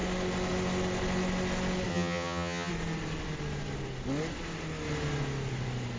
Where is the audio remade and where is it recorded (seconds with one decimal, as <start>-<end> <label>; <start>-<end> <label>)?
0.0-1.9 recorded; 1.9-2.7 remade; 2.7-6.0 recorded